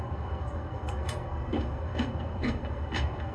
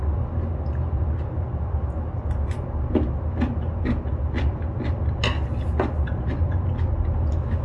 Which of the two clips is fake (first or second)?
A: first